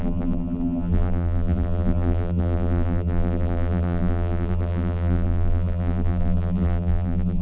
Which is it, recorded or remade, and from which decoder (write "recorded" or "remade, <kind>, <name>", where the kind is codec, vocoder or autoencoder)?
remade, vocoder, BigVGAN v2